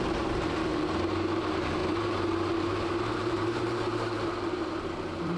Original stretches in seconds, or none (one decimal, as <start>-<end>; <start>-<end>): 1.8-2.5